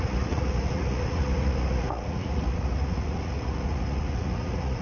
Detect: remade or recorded remade